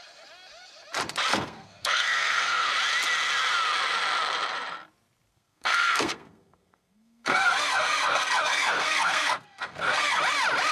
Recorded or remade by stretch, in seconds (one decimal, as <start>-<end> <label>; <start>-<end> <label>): 0.0-1.3 recorded; 1.3-2.7 remade; 2.7-5.3 recorded; 5.3-10.2 remade; 10.2-10.7 recorded